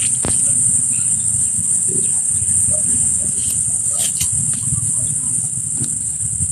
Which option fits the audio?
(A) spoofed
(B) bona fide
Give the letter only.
B